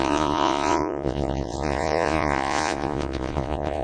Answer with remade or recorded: remade